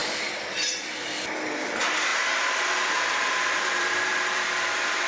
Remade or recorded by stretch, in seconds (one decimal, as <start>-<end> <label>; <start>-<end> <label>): 0.0-0.6 recorded; 0.6-5.1 remade